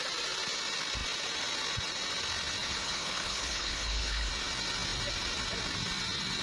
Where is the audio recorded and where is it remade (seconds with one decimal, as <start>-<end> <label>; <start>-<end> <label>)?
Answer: 0.0-2.6 recorded; 2.6-4.3 remade; 4.3-6.4 recorded